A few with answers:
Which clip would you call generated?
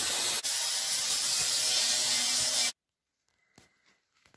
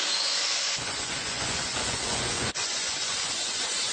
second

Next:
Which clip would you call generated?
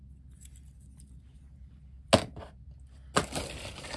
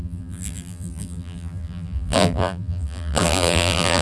second